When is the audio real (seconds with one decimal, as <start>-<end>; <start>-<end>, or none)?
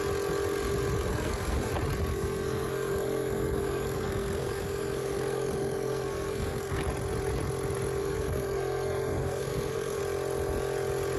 0.0-1.1; 1.7-2.1; 6.8-8.0; 10.0-11.2